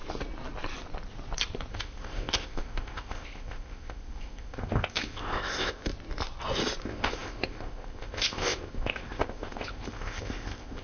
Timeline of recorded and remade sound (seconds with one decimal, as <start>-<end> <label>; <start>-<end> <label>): 0.0-1.7 recorded; 1.7-5.9 remade; 5.9-6.8 recorded; 6.8-10.8 remade